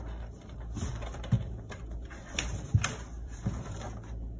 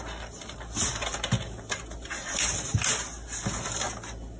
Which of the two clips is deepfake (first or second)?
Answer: first